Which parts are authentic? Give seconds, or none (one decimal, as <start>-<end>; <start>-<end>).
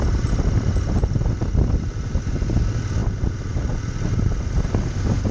0.0-5.3